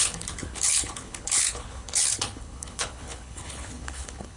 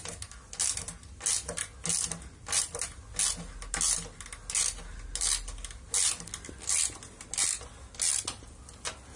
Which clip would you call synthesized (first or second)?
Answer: first